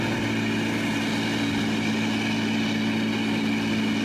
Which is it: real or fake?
real